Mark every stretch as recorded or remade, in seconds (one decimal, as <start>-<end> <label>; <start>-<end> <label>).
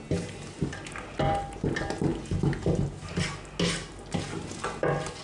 0.0-5.2 recorded